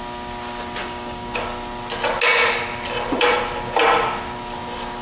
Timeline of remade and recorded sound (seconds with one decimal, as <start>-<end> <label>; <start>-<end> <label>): 0.0-0.8 recorded; 0.8-1.4 remade; 1.4-5.0 recorded